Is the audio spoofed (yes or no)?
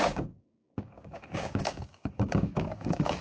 yes